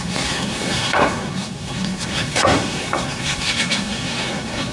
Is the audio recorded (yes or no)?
no